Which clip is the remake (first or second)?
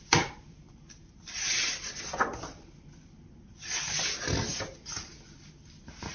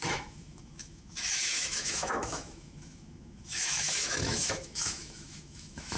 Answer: second